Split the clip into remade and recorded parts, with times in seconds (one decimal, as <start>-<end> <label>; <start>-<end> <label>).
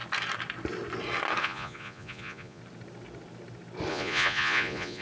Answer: 0.0-1.4 recorded; 1.4-2.6 remade; 2.6-3.9 recorded; 3.9-5.0 remade